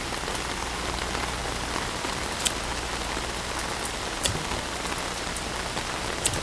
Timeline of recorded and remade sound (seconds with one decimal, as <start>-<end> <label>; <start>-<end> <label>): 0.0-1.4 recorded; 1.4-2.5 remade; 2.5-6.4 recorded